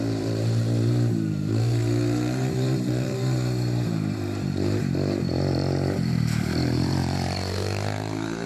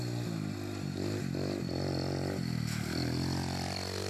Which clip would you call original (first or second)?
second